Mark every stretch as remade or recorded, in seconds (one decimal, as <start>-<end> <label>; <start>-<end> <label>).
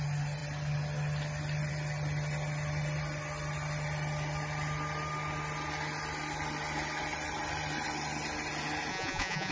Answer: 0.0-8.9 recorded; 8.9-9.5 remade